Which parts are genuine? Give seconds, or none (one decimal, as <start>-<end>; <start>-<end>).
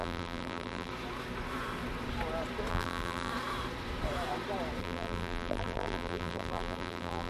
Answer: 0.9-2.7; 3.3-4.8